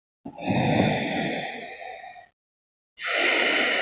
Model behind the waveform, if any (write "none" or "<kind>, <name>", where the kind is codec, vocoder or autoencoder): none